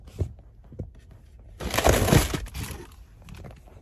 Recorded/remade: recorded